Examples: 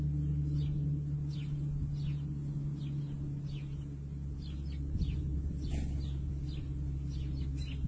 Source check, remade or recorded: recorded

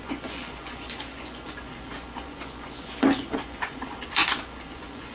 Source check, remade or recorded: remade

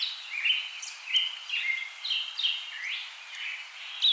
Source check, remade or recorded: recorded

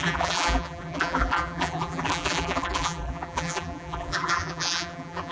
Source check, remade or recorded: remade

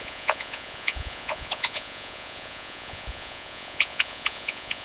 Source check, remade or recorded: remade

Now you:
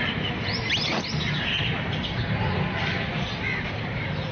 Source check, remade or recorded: recorded